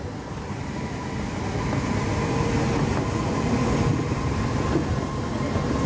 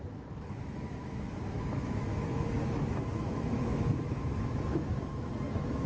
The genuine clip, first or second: first